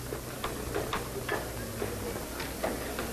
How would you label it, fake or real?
real